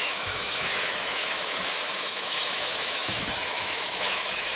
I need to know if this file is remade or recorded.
remade